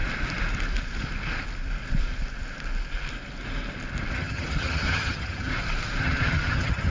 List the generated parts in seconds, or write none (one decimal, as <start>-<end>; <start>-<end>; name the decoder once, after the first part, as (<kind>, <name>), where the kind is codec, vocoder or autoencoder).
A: 4.1-5.5 (vocoder, HiFi-GAN); 6.0-6.9